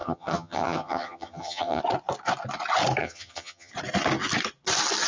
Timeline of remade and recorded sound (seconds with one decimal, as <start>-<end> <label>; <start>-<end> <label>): 0.0-1.8 remade; 1.8-3.0 recorded; 3.0-3.7 remade; 3.7-5.1 recorded